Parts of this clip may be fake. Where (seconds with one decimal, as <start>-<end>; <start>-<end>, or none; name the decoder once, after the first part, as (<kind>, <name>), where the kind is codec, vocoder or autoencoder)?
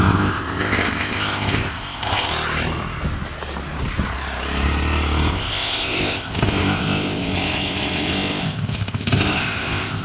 0.0-2.3 (codec, ZipCodec); 5.3-10.0